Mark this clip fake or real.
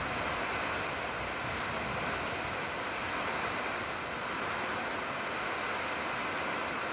real